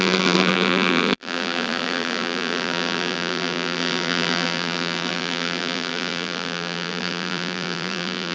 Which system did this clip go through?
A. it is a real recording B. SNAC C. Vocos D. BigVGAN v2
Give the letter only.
D